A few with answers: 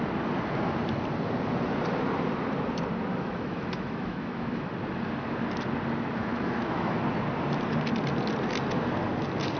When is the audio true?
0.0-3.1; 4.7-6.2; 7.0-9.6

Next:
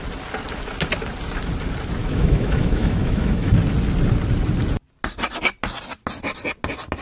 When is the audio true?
0.0-2.0; 3.5-7.0

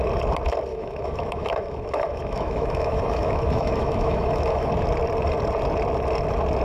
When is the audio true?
0.0-0.7; 4.7-6.6

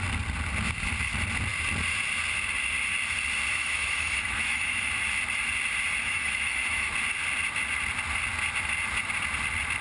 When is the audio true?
0.0-3.5; 4.9-6.0; 6.9-9.8

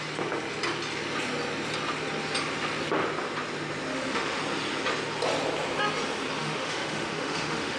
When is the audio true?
0.0-3.9; 4.4-6.4

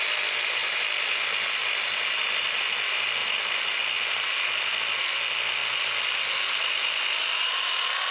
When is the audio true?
0.0-8.1

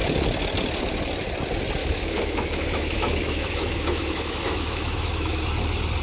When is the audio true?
0.0-1.8; 5.4-6.0